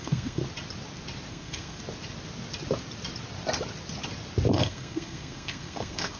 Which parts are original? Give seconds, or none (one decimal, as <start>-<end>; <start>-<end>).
0.4-1.3; 1.8-4.5

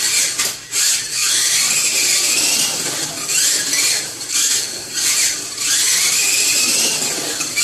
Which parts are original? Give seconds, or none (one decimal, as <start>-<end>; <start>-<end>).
0.0-1.1; 1.6-4.3; 4.9-7.6